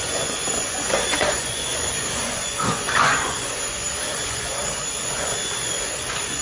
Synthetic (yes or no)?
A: yes